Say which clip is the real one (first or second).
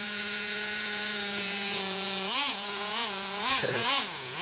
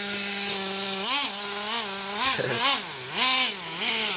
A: second